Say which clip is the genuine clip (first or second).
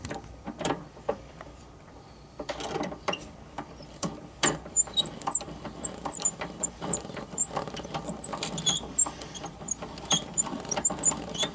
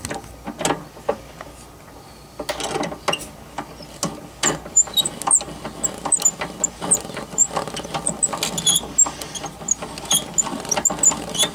second